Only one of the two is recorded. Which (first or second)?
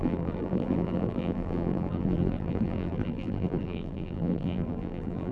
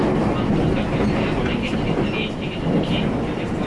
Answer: second